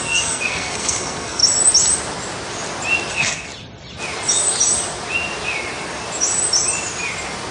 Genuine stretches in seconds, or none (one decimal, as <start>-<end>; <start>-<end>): 1.4-3.1; 3.5-7.5